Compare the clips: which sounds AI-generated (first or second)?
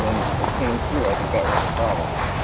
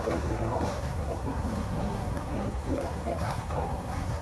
second